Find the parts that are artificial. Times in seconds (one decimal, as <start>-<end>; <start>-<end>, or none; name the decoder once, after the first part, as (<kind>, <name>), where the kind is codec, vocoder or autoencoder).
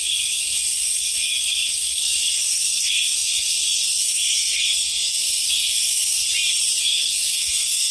0.0-6.2 (codec, SNAC); 6.8-7.9